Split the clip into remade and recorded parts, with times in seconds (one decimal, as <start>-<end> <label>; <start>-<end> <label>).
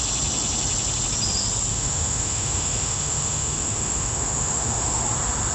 0.0-1.7 recorded; 1.7-5.0 remade; 5.0-5.5 recorded